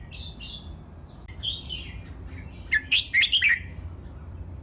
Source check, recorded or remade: recorded